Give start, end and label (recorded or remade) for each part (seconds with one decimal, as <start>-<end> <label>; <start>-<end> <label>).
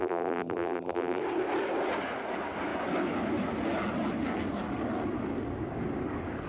0.0-1.2 remade; 1.2-6.5 recorded